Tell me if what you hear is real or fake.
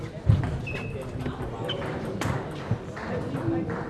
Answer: real